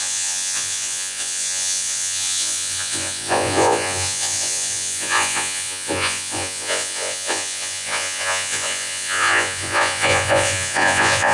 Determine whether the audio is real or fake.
fake